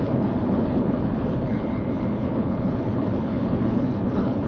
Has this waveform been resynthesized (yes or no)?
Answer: yes